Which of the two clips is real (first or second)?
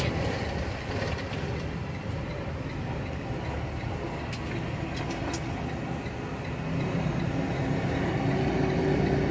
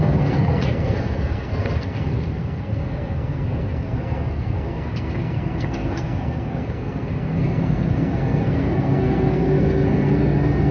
first